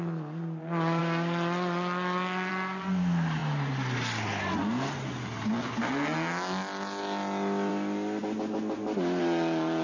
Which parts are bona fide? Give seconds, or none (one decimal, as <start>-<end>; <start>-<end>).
0.0-9.8